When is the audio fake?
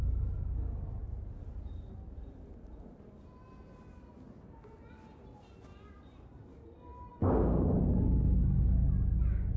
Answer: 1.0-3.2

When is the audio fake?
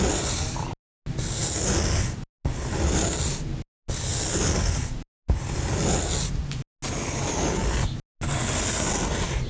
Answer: none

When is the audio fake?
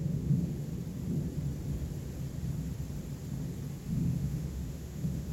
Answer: 0.0-0.7; 3.9-5.3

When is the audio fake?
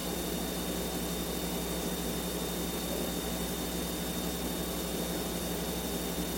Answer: none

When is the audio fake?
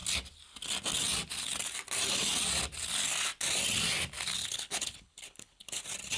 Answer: 4.4-5.8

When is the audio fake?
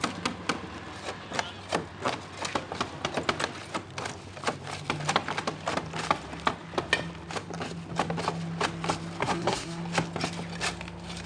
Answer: 9.2-9.8